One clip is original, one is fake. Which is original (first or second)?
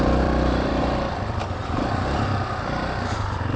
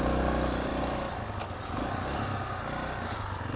second